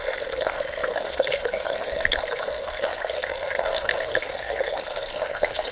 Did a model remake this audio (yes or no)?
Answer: yes